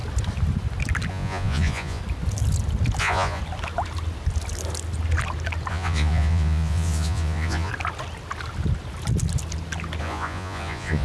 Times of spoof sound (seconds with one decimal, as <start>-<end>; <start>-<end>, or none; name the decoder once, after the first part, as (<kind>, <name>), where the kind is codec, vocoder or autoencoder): 1.1-2.0 (vocoder, Vocos); 3.0-3.4; 5.7-7.7; 10.0-11.0